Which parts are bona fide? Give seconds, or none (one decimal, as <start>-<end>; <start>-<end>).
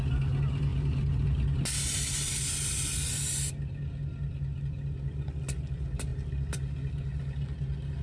0.0-8.0